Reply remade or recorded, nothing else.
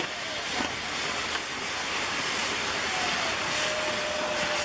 recorded